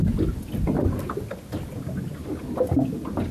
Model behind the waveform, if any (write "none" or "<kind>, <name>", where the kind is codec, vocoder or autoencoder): none